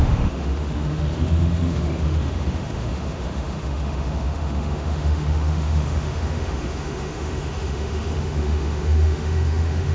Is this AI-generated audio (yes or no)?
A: yes